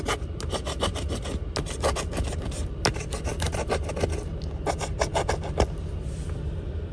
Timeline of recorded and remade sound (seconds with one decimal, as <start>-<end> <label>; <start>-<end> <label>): 0.0-6.9 recorded